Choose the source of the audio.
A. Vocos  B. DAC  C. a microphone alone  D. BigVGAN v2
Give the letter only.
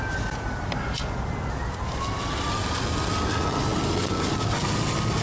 C